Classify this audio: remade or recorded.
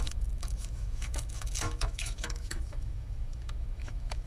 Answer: remade